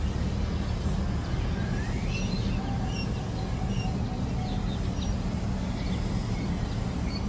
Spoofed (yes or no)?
no